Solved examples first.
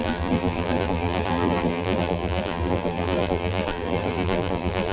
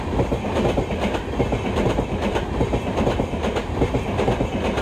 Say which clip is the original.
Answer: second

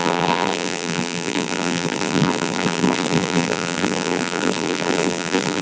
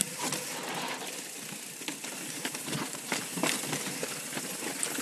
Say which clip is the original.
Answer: second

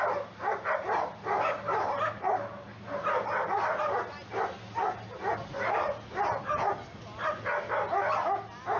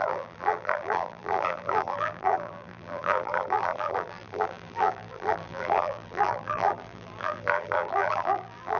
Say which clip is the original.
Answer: first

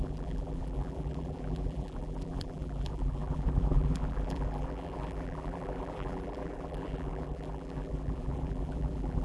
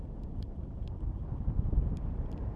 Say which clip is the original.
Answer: second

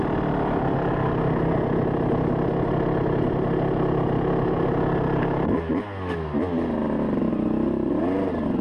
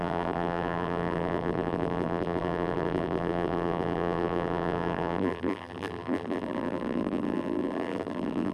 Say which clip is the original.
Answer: first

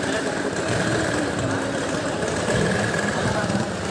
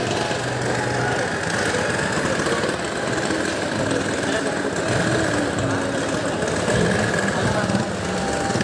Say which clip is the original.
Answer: second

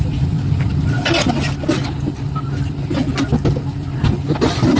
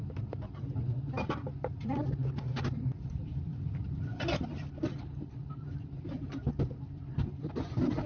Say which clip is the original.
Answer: first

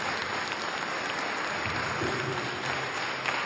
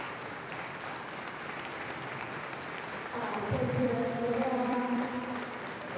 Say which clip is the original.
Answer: first